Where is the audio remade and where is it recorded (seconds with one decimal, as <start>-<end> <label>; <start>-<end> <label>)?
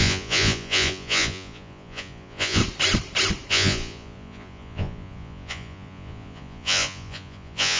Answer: 0.0-2.6 remade; 2.6-3.5 recorded; 3.5-7.8 remade